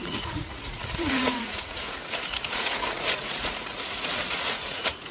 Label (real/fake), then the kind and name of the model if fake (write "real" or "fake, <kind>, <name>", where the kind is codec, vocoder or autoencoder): fake, vocoder, Vocos